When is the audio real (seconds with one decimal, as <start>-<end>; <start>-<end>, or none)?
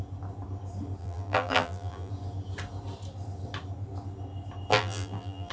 0.0-1.0; 2.1-4.7